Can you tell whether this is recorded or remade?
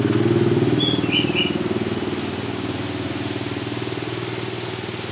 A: recorded